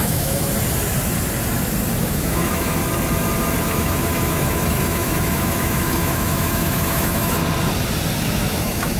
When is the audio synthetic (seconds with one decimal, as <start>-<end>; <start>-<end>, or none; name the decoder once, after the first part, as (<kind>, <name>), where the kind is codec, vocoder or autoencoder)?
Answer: 0.0-0.5 (autoencoder, DAC-VAE); 2.0-2.8; 3.6-7.4; 8.2-9.0